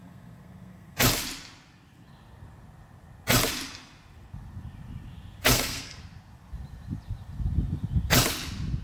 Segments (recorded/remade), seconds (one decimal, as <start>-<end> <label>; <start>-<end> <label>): 0.0-1.0 remade; 1.0-5.4 recorded; 5.4-6.0 remade; 6.0-8.8 recorded

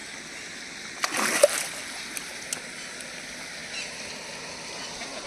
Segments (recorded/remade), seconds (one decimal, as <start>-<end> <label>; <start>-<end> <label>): 0.0-5.3 recorded

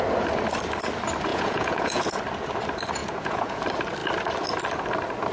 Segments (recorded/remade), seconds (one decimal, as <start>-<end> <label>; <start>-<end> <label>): 0.0-1.3 recorded; 1.3-2.1 remade; 2.1-3.0 recorded; 3.0-3.6 remade; 3.6-5.3 recorded

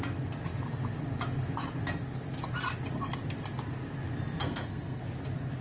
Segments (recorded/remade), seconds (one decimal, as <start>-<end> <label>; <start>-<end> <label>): 0.0-4.4 recorded; 4.4-5.0 remade; 5.0-5.6 recorded